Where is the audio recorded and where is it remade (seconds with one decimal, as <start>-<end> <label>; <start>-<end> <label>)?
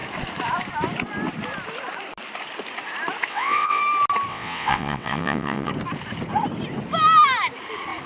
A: 0.0-3.3 recorded; 3.3-3.8 remade; 3.8-4.3 recorded; 4.3-5.7 remade; 5.7-8.1 recorded